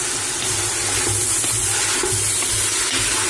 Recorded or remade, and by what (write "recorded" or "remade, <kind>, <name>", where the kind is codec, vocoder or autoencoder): recorded